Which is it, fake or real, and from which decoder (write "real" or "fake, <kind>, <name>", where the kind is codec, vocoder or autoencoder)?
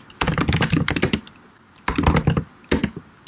real